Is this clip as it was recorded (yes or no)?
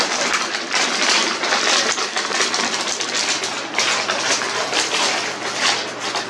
yes